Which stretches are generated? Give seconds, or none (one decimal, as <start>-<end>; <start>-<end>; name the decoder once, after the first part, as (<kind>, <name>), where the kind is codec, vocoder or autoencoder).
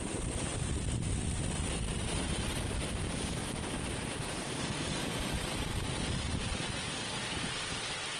0.0-0.5 (vocoder, BigVGAN v2); 2.0-8.2